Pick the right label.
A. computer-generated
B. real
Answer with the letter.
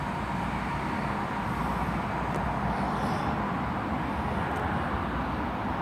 B